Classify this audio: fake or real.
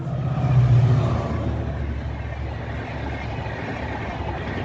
real